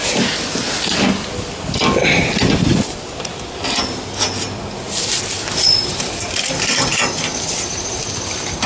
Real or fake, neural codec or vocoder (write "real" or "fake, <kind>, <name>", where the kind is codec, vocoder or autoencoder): real